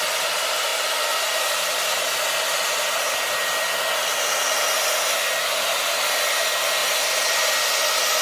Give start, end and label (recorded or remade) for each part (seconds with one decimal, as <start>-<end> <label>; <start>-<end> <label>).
0.0-0.7 remade; 0.7-5.4 recorded; 5.4-6.8 remade; 6.8-8.2 recorded